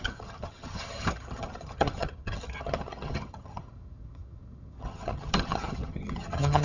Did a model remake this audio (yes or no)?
yes